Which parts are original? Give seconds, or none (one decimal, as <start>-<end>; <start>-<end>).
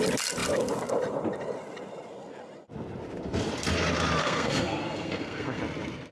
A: 0.0-4.2; 5.6-6.1